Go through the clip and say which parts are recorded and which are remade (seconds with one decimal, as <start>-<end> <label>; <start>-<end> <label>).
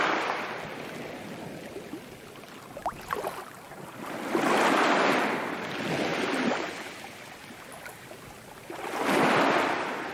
0.0-7.4 recorded; 7.4-8.2 remade; 8.2-10.1 recorded